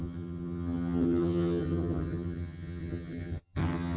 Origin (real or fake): fake